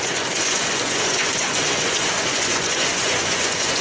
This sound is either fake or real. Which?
fake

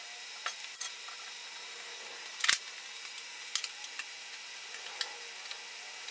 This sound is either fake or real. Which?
real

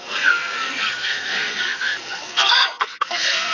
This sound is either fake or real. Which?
fake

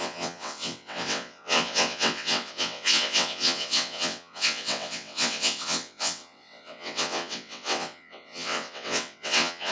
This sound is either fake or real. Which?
fake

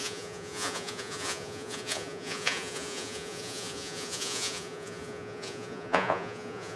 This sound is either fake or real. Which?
fake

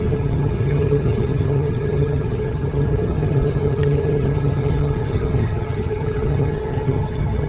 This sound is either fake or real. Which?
fake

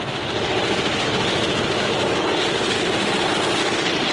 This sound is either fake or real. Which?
real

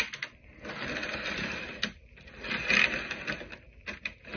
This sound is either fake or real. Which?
real